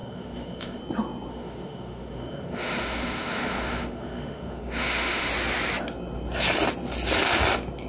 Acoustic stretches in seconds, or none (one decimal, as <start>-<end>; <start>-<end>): 0.8-1.3; 5.3-7.9